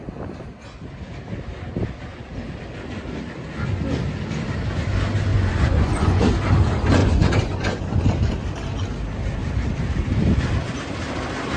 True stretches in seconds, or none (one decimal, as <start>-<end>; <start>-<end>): 0.0-5.3; 6.3-7.0; 7.8-11.6